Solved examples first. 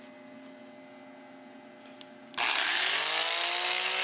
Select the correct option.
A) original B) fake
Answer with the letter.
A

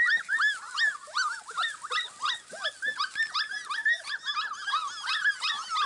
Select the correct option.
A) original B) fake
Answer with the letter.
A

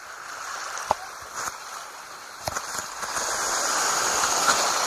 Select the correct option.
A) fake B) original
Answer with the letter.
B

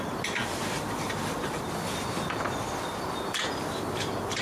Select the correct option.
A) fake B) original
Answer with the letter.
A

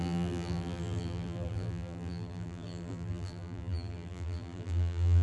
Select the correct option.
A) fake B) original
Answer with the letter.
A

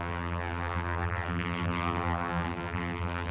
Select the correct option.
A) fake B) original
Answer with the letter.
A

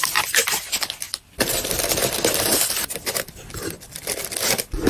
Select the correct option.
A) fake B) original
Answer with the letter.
A